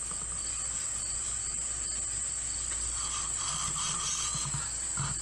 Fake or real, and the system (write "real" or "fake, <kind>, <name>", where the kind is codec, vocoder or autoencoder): real